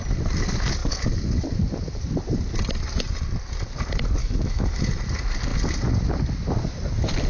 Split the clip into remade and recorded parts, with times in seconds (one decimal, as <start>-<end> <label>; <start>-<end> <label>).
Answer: 0.0-4.2 recorded; 4.2-4.9 remade; 4.9-7.3 recorded